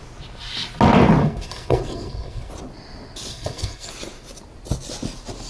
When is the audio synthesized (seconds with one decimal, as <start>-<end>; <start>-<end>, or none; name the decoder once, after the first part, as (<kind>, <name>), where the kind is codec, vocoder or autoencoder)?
1.2-2.5 (codec, SNAC); 3.3-3.9